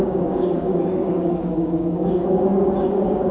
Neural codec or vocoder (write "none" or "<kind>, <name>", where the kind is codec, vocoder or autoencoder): codec, DAC